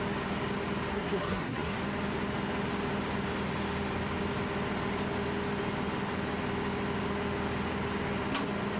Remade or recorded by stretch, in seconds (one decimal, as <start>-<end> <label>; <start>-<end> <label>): 0.0-0.9 recorded; 0.9-1.8 remade; 1.8-8.8 recorded